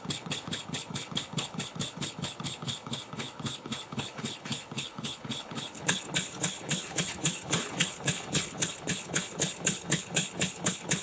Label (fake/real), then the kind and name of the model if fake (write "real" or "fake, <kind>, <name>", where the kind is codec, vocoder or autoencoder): fake, codec, HILCodec